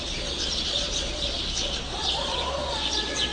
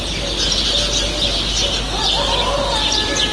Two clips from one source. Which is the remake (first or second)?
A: first